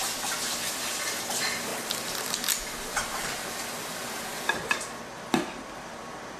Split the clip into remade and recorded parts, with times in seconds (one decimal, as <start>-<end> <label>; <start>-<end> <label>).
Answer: 0.0-6.4 recorded